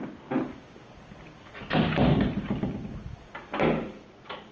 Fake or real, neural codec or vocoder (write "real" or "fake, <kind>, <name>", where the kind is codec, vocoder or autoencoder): real